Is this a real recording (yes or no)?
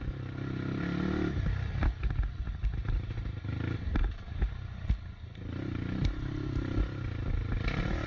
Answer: yes